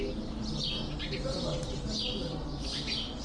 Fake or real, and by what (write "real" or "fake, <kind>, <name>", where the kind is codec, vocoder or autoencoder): real